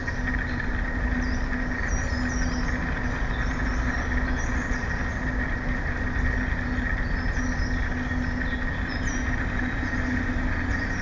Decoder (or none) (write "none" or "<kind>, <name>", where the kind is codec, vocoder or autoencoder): none